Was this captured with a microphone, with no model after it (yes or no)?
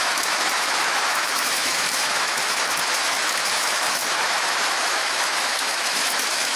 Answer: no